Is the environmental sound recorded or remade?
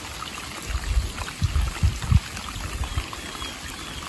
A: recorded